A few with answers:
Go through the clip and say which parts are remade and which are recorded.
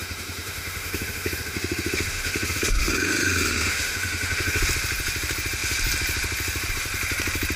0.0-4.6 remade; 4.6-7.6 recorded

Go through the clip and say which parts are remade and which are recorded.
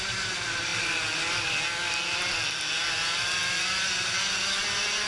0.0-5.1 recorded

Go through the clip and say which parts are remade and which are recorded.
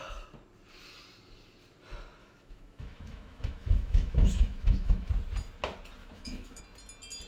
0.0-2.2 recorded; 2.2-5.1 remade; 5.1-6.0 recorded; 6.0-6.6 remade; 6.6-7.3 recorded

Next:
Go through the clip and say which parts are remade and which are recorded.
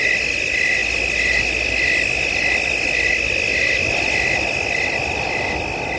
0.0-6.0 recorded